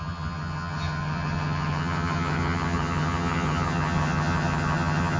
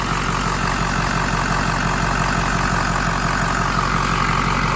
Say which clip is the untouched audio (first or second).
second